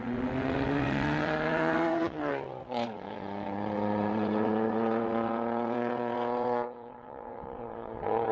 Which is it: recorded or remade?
remade